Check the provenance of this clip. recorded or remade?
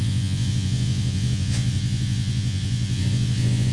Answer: remade